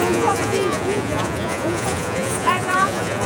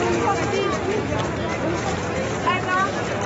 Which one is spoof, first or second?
first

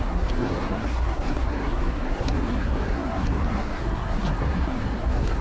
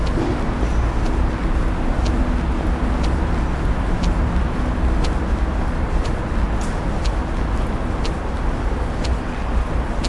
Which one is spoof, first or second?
first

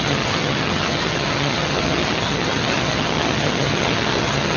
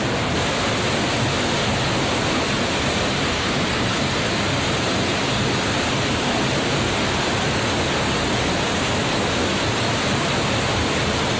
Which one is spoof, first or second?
first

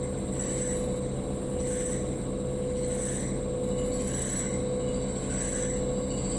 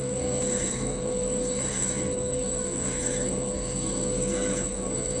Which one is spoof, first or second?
second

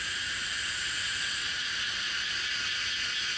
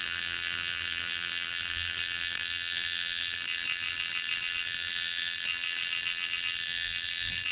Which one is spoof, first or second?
second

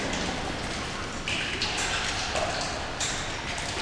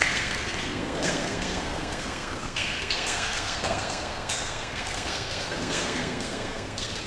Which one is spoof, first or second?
second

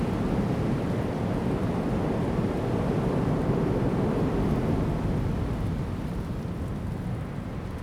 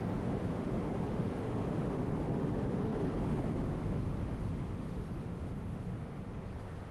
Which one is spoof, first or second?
second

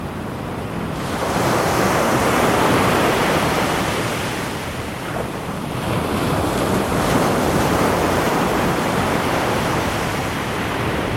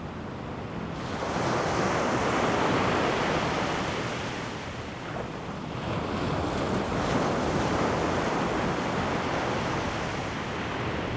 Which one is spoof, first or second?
first